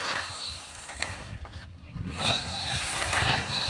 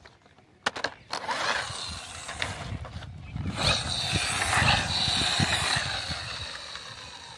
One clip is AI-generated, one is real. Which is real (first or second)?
second